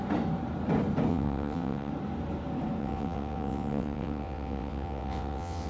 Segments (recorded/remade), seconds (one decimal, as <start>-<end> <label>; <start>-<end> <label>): 0.0-1.1 recorded; 1.1-1.9 remade; 1.9-2.8 recorded; 2.8-5.7 remade